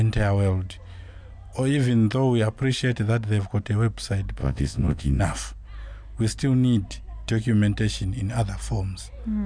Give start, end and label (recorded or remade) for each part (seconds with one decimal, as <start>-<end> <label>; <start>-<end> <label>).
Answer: 0.0-4.4 recorded; 4.4-5.2 remade; 5.2-9.5 recorded